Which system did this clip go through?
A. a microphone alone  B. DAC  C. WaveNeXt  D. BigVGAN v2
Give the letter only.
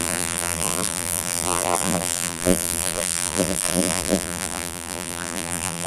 D